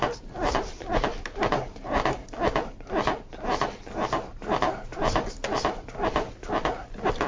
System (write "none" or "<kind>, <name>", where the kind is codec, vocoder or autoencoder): none